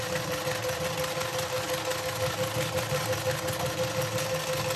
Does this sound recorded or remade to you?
recorded